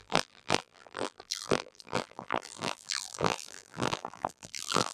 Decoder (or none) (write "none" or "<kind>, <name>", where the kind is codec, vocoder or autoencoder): vocoder, BigVGAN v2